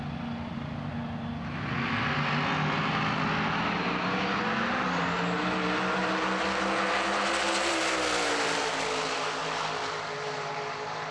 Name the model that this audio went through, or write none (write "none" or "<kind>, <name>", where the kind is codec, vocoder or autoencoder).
none